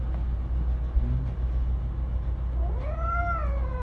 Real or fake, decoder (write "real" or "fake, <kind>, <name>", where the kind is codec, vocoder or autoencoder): real